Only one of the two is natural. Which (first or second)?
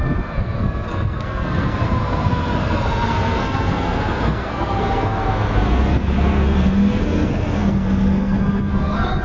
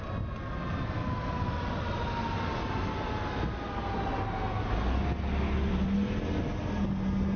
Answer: second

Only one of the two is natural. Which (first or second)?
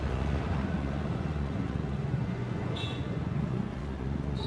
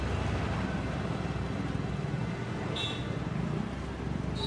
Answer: second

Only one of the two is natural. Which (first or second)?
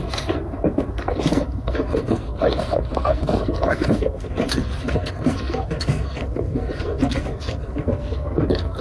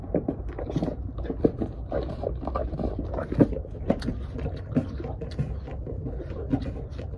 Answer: second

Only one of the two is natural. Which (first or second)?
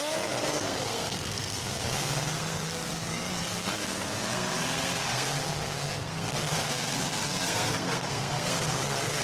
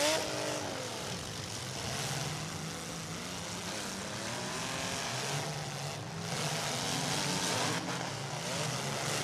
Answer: second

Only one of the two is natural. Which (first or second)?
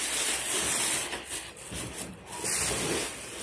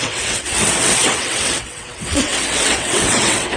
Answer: first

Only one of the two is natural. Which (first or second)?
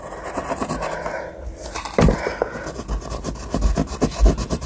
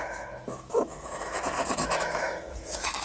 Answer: first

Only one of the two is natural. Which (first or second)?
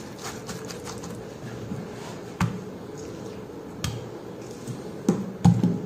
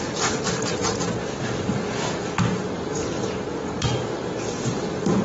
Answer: first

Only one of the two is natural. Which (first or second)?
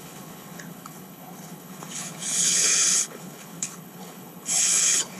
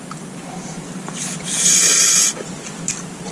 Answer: second